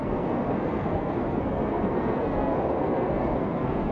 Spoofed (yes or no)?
yes